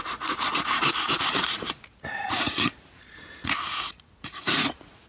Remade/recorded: remade